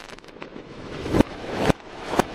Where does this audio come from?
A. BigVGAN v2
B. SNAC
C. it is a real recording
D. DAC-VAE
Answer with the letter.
D